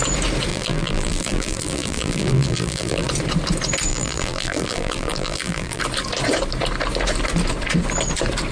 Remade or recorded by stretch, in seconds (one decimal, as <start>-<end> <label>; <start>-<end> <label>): 0.0-0.5 recorded; 0.5-3.1 remade; 3.1-3.9 recorded; 3.9-5.8 remade; 5.8-8.5 recorded